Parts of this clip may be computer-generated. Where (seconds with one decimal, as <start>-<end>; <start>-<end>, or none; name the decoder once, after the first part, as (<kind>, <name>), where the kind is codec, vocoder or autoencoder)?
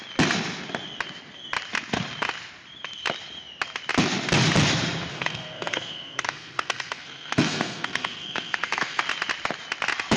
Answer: 5.1-9.0 (codec, SNAC)